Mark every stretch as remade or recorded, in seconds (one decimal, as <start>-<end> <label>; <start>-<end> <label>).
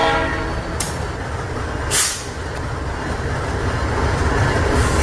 0.0-5.0 recorded